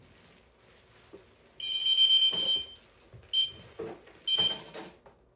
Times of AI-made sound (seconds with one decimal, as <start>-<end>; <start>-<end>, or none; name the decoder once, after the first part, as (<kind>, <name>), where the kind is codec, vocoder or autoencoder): none